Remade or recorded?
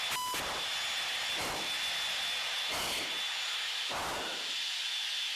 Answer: recorded